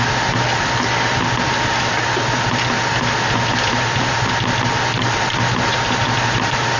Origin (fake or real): real